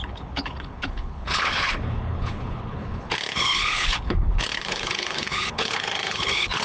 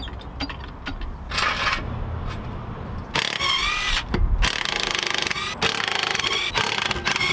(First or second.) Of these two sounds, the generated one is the first